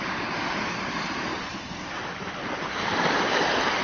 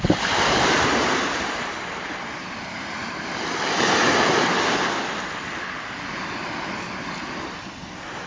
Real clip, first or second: second